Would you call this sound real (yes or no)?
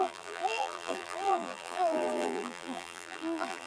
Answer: no